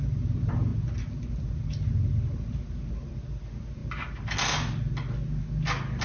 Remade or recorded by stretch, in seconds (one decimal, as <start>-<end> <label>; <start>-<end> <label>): 0.0-6.0 recorded